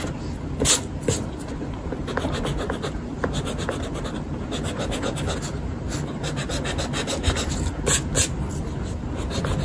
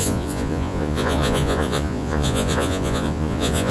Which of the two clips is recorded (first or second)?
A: first